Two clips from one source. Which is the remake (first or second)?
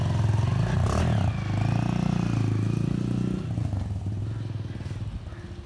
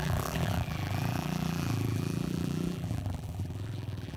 second